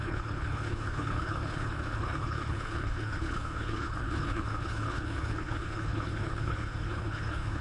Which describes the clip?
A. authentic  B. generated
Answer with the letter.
B